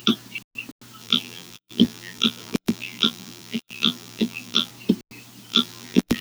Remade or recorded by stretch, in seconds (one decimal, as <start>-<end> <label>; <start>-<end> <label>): 0.0-1.0 recorded; 1.0-4.7 remade; 4.7-5.5 recorded; 5.5-6.2 remade